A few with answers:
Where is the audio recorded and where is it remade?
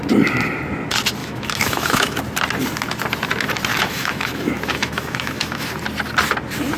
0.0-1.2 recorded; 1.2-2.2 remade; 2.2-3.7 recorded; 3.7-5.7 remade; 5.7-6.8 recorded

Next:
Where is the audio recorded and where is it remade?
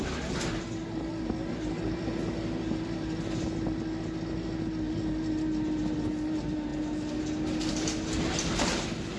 0.0-9.2 recorded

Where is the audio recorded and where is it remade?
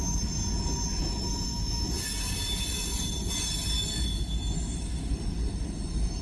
0.0-1.0 recorded; 1.0-1.9 remade; 1.9-4.1 recorded; 4.1-5.1 remade; 5.1-6.2 recorded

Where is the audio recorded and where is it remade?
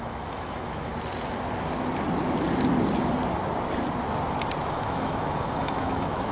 0.0-0.9 remade; 0.9-4.7 recorded; 4.7-6.3 remade